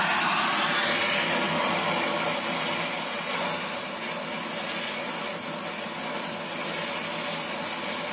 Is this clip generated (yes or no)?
no